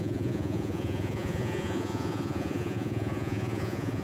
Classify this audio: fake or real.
fake